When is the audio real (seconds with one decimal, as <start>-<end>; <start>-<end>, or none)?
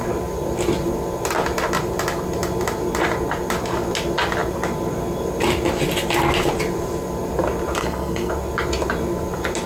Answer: 0.0-7.8; 8.3-9.7